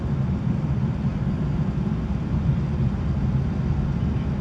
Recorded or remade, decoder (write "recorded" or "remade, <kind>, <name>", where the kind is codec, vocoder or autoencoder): recorded